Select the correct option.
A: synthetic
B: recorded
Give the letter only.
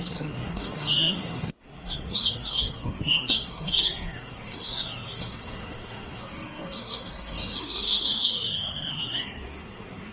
A